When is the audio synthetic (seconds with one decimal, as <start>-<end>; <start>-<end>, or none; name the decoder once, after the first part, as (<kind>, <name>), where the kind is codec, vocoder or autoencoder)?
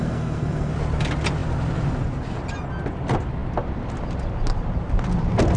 0.0-0.7 (codec, SNAC)